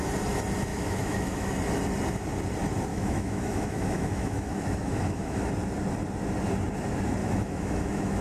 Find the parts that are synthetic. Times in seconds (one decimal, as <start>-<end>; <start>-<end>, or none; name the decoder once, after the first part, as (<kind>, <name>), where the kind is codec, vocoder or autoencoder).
0.7-1.5 (autoencoder, DAC-VAE); 2.9-5.5; 7.2-8.2

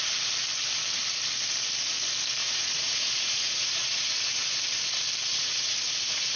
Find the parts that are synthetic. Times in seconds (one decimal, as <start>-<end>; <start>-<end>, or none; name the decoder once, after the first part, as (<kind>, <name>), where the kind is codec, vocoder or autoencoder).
2.4-4.6 (vocoder, Vocos); 5.3-6.4

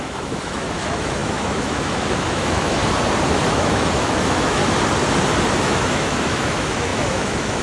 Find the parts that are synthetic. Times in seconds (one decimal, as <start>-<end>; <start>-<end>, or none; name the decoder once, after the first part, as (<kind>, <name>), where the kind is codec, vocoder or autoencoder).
0.0-2.8 (autoencoder, DAC-VAE); 3.5-4.6; 5.6-7.6

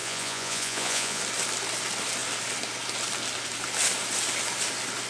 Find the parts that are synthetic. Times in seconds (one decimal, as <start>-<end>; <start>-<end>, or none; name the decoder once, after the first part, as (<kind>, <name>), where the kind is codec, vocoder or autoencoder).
0.0-1.2 (vocoder, Vocos)

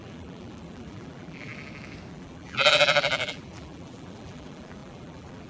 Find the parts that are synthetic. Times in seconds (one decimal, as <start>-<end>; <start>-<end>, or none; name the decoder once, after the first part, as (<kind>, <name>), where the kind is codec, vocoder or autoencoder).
0.0-1.5 (vocoder, BigVGAN v2); 2.1-5.5